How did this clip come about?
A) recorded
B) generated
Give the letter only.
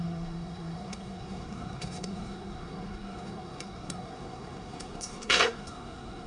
B